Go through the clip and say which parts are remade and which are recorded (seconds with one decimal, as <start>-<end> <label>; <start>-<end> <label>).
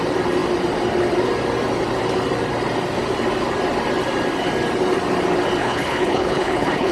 0.0-5.6 recorded; 5.6-6.9 remade